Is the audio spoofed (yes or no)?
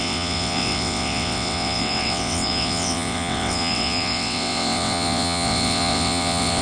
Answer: yes